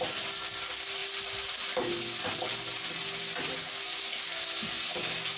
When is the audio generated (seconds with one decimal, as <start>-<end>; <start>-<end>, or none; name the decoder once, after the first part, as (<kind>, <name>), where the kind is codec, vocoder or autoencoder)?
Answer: none